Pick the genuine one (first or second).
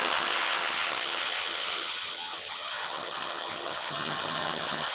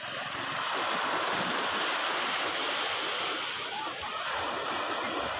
second